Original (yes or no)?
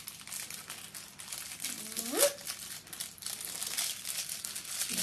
yes